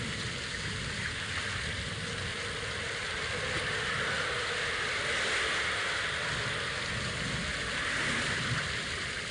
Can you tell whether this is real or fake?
real